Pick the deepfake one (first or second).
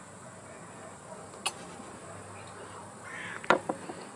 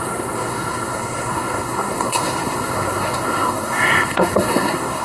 second